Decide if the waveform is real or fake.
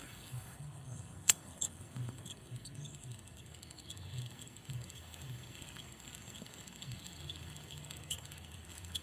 fake